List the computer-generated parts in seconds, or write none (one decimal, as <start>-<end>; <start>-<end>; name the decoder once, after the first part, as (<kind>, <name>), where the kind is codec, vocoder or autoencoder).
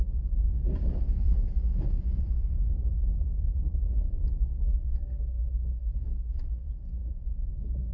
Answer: 1.7-4.1 (vocoder, Vocos); 7.0-7.5